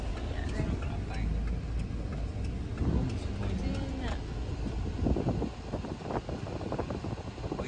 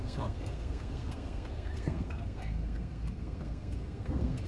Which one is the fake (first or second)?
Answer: second